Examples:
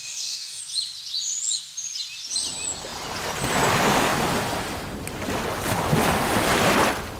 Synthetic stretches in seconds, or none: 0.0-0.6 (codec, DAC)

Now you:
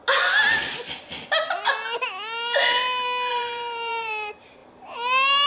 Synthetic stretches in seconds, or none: 3.3-4.6 (vocoder, BigVGAN v2)